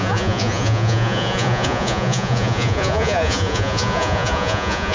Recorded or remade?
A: remade